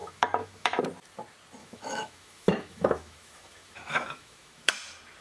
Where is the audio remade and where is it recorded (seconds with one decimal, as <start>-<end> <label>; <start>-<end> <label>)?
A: 0.0-0.8 remade; 0.8-1.6 recorded; 1.6-4.7 remade; 4.7-5.2 recorded